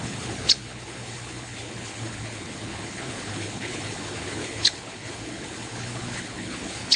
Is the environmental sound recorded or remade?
remade